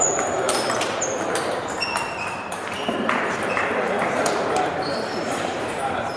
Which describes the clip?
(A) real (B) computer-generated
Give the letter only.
B